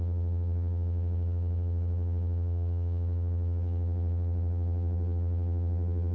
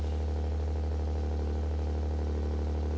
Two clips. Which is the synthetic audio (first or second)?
first